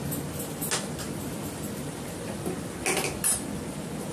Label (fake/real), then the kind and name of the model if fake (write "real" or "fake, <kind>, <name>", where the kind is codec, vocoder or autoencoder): real